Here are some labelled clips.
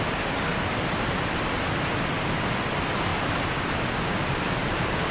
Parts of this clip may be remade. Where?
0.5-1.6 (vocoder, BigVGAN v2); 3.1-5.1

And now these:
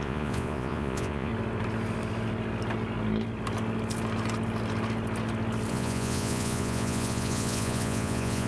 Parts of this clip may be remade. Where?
0.0-1.3 (vocoder, Vocos); 5.7-8.5

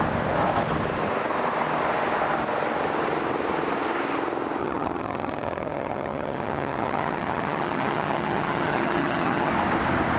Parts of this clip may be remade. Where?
4.6-9.5 (vocoder, HiFi-GAN)

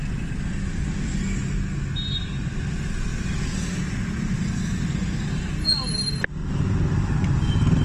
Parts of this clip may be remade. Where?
none

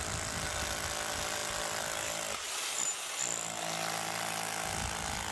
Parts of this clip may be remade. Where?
none

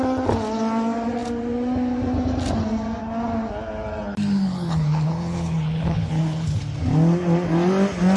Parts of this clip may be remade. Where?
4.3-6.6 (codec, HILCodec)